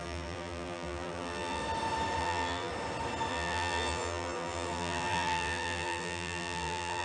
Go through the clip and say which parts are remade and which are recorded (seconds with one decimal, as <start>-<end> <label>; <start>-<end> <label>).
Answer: 0.0-1.6 remade; 1.6-2.2 recorded; 2.2-2.7 remade; 2.7-3.3 recorded; 3.3-7.0 remade